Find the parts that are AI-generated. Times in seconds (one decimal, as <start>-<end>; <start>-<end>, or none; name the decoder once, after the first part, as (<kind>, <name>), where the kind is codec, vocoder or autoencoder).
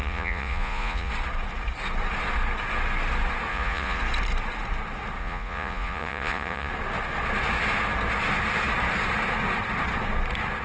0.0-1.1 (vocoder, Vocos); 3.5-4.0; 5.2-6.7